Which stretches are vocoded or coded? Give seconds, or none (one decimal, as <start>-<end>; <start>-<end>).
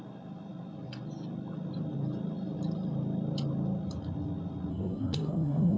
4.7-5.8